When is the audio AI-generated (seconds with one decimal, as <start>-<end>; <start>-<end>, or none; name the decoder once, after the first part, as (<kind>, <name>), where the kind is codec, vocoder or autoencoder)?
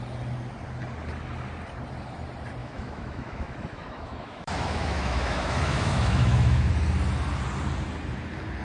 2.6-6.7 (autoencoder, DAC-VAE)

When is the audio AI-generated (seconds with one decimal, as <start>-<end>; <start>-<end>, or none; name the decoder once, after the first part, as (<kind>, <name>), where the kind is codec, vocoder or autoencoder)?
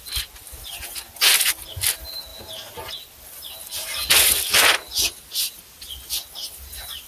none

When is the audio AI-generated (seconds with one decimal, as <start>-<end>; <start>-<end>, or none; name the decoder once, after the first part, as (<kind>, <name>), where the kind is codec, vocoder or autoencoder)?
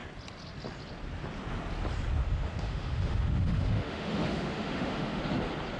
2.2-5.2 (autoencoder, DAC-VAE)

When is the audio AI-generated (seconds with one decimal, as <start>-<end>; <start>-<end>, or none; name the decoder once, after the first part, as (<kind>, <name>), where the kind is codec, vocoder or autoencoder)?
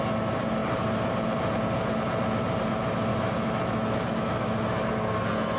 3.1-4.9 (autoencoder, DAC-VAE)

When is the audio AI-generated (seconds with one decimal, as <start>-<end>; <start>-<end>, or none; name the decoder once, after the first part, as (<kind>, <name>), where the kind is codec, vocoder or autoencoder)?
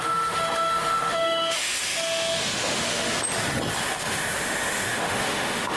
0.0-3.1 (autoencoder, DAC-VAE); 3.8-5.8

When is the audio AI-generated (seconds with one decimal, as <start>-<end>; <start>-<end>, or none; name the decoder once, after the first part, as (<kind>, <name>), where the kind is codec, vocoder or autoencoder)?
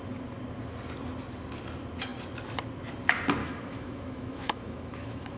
3.4-5.4 (autoencoder, DAC-VAE)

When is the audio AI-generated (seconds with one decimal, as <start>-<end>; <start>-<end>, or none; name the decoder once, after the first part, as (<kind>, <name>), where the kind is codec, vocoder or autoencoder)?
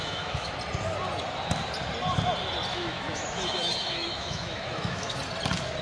0.0-0.5 (autoencoder, DAC-VAE); 2.7-5.2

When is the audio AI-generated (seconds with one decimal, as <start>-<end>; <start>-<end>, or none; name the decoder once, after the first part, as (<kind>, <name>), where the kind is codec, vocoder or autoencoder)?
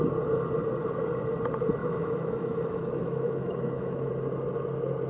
1.8-4.1 (autoencoder, DAC-VAE)